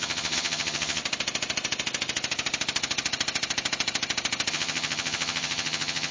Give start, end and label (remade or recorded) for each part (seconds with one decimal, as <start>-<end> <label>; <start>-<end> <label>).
0.0-1.0 remade; 1.0-4.5 recorded; 4.5-6.1 remade